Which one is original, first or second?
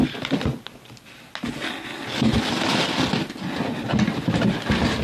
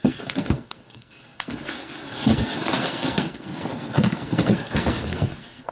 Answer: first